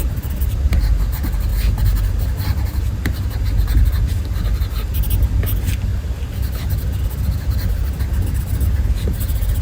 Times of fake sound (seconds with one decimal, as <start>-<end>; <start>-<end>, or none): none